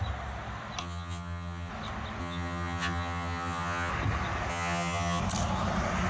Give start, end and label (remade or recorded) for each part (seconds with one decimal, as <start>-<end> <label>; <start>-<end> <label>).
0.0-0.8 recorded; 0.8-1.7 remade; 1.7-2.2 recorded; 2.2-3.9 remade; 3.9-4.5 recorded; 4.5-5.2 remade; 5.2-6.1 recorded